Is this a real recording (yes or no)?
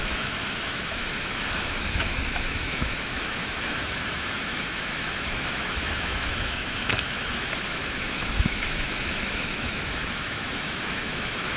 no